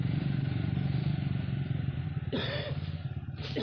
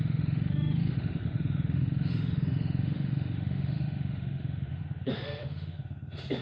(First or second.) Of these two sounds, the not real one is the second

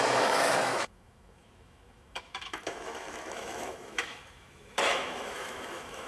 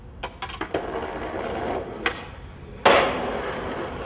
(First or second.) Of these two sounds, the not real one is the first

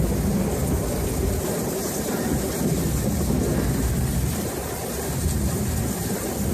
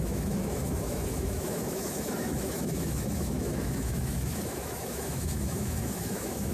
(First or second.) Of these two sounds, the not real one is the second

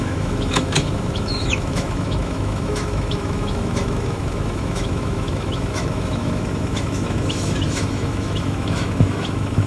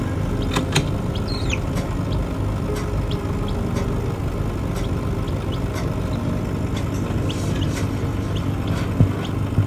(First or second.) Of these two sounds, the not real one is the first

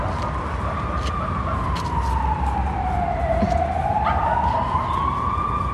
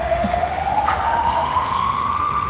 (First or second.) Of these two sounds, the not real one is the second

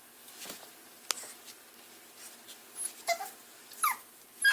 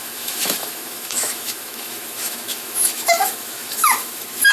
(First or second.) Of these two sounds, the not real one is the second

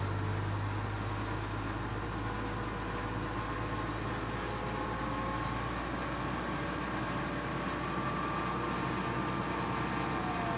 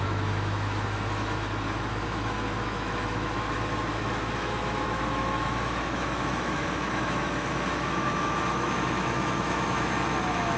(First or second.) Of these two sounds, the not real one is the second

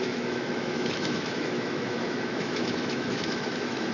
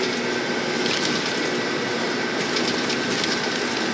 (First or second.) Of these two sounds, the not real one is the first